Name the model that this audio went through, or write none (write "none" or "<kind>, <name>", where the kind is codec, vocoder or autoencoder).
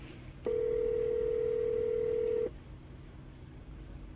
none